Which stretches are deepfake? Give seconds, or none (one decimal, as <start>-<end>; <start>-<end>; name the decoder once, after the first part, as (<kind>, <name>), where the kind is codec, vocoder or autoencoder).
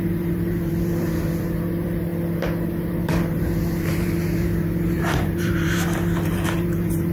0.0-2.1 (vocoder, BigVGAN v2); 2.7-7.1